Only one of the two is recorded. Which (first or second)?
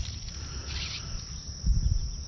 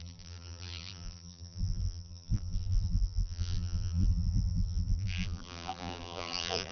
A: first